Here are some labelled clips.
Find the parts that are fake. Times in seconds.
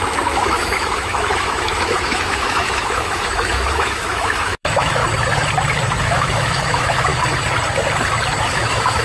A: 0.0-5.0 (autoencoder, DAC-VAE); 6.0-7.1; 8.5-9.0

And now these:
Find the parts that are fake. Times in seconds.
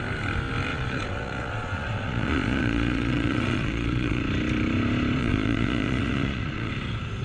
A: 0.7-4.2 (vocoder, Vocos); 5.2-6.7